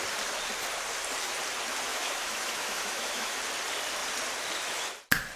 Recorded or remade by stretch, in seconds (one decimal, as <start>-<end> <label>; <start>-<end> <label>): 0.0-1.9 recorded; 1.9-3.4 remade; 3.4-5.4 recorded